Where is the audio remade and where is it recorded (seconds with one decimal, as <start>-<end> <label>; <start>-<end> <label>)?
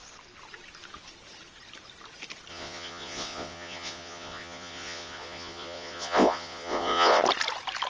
0.0-2.5 recorded; 2.5-7.2 remade; 7.2-7.9 recorded